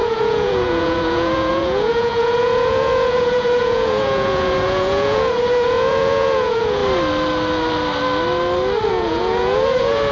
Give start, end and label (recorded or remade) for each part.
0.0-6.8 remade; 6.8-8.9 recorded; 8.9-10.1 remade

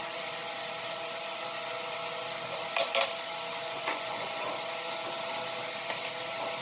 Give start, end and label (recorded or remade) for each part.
0.0-3.6 recorded; 3.6-4.5 remade; 4.5-6.6 recorded

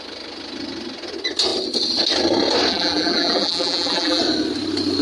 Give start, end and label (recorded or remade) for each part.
0.0-2.7 recorded; 2.7-4.2 remade; 4.2-5.0 recorded

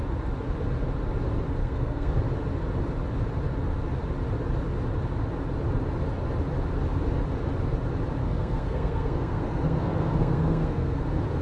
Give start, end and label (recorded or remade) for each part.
0.0-1.6 recorded; 1.6-2.2 remade; 2.2-8.2 recorded; 8.2-11.0 remade; 11.0-11.4 recorded